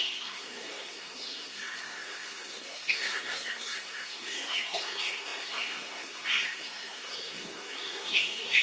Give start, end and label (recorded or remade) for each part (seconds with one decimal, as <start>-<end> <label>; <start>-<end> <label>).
0.0-8.6 remade